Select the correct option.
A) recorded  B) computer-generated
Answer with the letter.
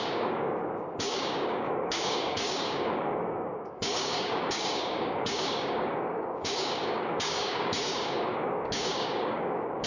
B